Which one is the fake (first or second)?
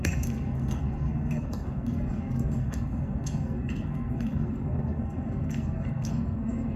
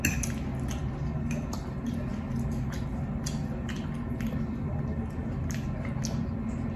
first